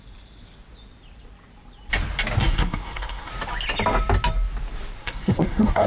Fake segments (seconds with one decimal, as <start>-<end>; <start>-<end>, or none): 2.4-3.3; 5.0-5.9